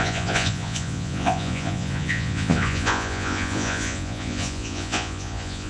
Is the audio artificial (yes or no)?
yes